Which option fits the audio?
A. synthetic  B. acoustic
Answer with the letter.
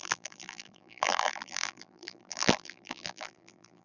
A